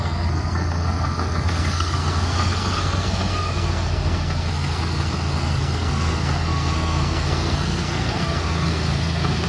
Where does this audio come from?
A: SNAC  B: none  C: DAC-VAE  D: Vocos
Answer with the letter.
A